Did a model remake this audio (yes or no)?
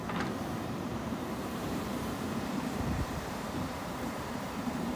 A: yes